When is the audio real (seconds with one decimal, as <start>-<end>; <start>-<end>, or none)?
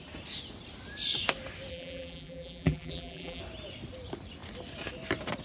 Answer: 0.0-1.7; 3.4-5.4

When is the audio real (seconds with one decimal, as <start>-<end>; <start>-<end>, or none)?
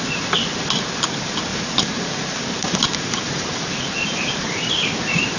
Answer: 0.0-1.5; 4.7-5.4